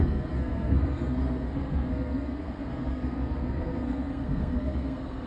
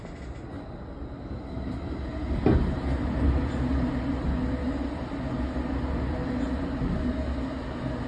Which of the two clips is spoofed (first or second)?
first